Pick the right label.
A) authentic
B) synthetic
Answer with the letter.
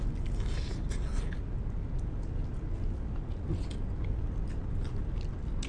A